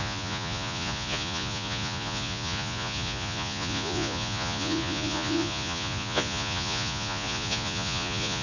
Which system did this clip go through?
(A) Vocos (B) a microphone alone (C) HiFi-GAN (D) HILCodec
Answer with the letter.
A